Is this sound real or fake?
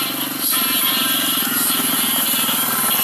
real